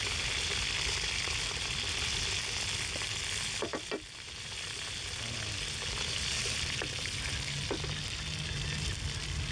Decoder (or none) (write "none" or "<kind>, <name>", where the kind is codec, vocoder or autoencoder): none